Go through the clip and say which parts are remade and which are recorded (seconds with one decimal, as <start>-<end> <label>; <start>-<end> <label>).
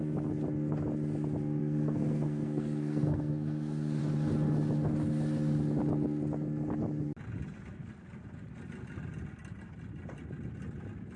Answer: 0.0-1.6 recorded; 1.6-4.0 remade; 4.0-11.2 recorded